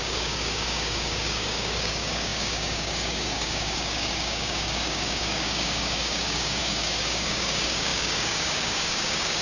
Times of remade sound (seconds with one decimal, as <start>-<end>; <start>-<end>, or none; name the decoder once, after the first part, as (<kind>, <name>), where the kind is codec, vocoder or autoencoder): 0.0-9.4 (codec, DAC)